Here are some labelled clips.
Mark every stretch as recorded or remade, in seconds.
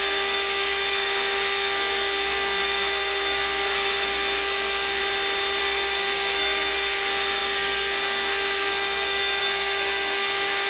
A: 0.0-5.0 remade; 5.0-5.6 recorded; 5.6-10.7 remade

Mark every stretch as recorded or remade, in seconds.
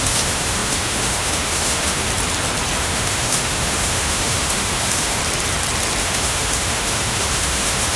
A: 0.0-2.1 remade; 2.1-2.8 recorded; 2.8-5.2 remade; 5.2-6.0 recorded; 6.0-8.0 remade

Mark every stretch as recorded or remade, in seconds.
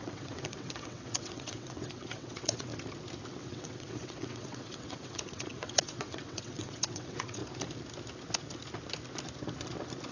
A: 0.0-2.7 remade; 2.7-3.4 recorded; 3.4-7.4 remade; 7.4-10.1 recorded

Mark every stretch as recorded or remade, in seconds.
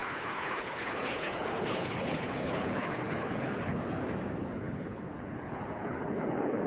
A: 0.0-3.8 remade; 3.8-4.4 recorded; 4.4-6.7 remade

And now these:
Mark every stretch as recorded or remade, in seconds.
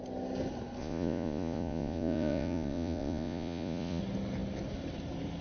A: 0.0-0.8 recorded; 0.8-4.0 remade; 4.0-5.4 recorded